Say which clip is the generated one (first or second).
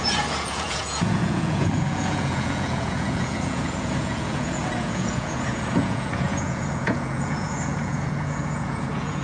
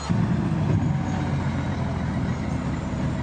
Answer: first